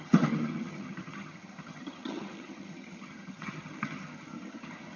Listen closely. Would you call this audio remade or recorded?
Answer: remade